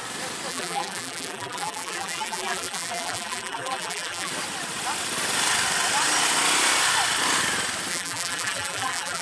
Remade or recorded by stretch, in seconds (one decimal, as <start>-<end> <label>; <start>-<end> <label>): 0.0-0.5 recorded; 0.5-4.3 remade; 4.3-7.9 recorded; 7.9-9.2 remade